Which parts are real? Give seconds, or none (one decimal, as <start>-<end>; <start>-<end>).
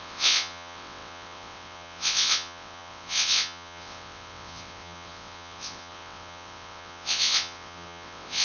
none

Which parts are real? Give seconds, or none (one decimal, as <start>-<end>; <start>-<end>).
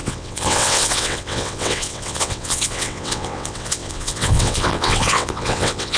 none